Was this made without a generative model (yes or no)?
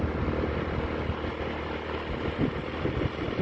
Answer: yes